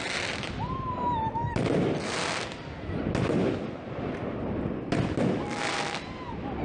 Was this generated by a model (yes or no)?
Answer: no